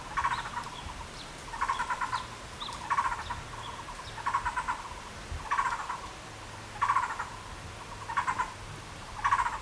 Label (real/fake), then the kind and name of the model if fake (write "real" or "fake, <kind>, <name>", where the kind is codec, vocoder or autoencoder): real